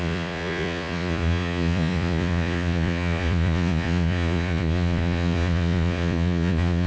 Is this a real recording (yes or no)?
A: no